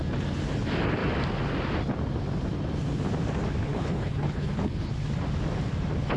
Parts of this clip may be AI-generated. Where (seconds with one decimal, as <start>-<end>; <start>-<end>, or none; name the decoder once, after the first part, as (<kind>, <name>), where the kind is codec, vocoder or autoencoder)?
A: 3.6-4.9 (codec, HILCodec)